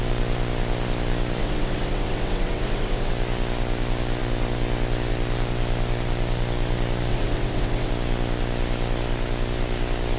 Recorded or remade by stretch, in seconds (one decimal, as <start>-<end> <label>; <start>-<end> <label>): 0.0-1.4 recorded; 1.4-3.1 remade; 3.1-7.1 recorded; 7.1-7.9 remade; 7.9-10.2 recorded